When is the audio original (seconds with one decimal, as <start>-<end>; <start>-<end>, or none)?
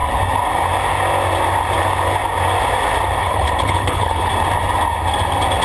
0.0-3.2; 4.3-5.6